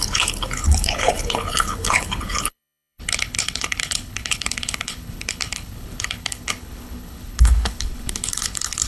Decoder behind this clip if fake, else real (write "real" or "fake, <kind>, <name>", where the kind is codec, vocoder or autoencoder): fake, codec, HILCodec